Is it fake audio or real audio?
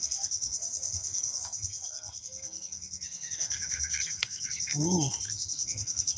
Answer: fake